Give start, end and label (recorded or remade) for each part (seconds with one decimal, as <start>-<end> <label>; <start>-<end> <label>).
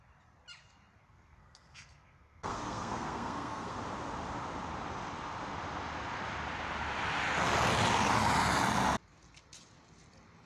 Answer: 0.0-1.0 recorded; 1.0-3.8 remade; 3.8-10.5 recorded